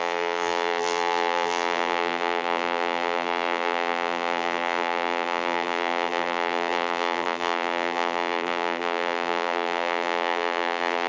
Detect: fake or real fake